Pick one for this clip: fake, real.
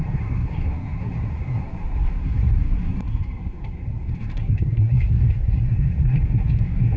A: fake